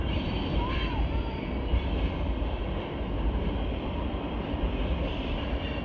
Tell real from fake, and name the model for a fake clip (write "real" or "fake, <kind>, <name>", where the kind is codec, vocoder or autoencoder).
fake, vocoder, BigVGAN v2